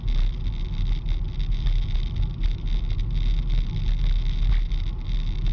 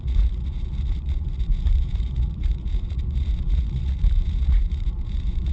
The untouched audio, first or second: first